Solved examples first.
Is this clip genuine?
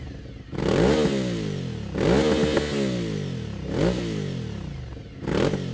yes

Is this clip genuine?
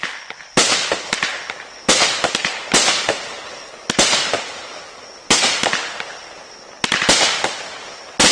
yes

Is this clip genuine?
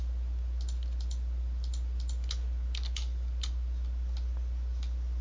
yes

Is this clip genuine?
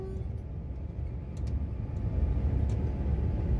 yes